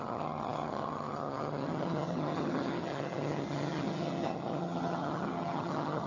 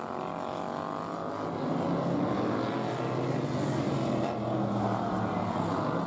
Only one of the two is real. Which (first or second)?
second